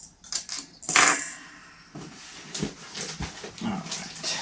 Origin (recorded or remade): recorded